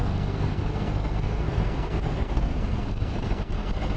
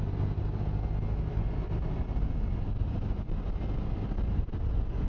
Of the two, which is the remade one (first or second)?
first